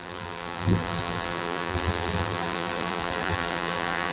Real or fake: fake